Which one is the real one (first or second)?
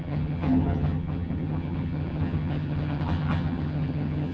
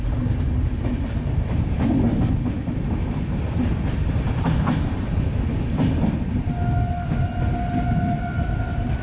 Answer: second